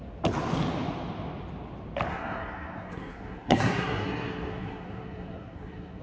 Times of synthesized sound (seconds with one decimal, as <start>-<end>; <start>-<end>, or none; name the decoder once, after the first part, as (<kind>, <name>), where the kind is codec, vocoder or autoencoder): 2.1-6.0 (codec, SNAC)